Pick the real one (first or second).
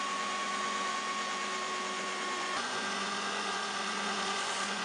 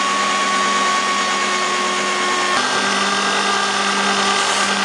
second